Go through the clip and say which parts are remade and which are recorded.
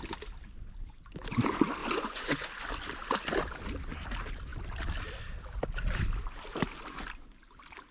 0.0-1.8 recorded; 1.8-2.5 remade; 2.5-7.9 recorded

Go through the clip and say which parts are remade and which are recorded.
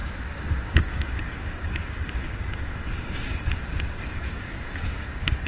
0.0-5.5 remade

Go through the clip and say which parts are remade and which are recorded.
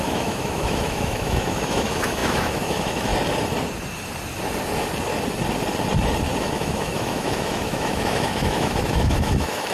0.0-3.1 remade; 3.1-6.4 recorded; 6.4-9.7 remade